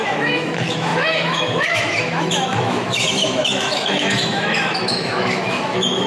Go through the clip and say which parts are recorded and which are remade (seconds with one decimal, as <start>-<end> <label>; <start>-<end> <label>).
0.0-6.1 remade